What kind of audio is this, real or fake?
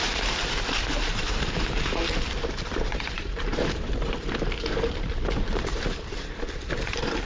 fake